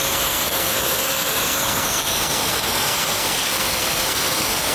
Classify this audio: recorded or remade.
remade